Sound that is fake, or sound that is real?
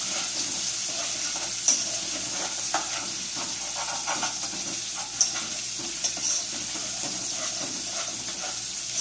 real